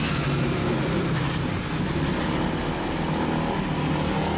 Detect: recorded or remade recorded